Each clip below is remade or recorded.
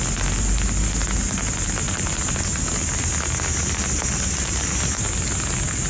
recorded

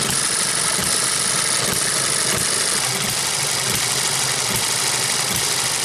recorded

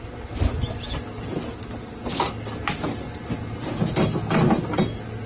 recorded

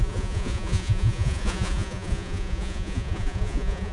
remade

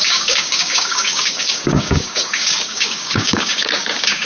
remade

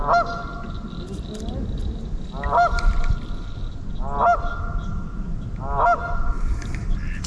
recorded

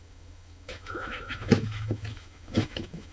remade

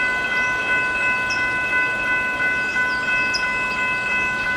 recorded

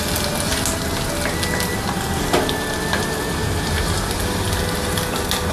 recorded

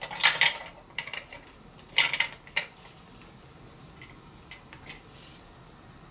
recorded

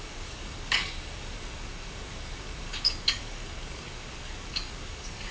remade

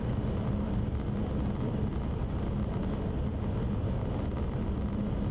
recorded